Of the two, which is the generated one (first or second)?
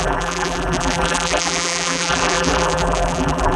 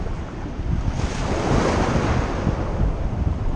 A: first